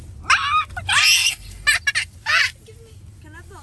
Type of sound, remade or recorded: recorded